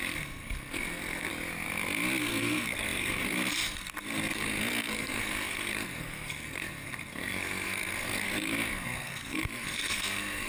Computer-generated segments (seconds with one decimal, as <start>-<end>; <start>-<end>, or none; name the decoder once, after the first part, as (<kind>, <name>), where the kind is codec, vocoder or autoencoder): 0.0-1.3 (codec, SNAC); 2.2-10.5